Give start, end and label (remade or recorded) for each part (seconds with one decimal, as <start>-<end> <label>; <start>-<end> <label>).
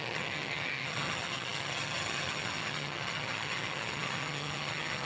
0.0-5.1 remade